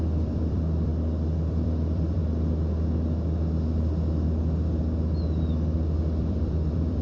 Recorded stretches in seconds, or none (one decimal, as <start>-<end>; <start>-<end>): 0.9-1.5; 2.2-6.2